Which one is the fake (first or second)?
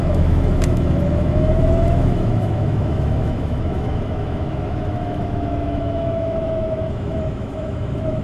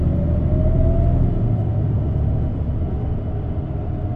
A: first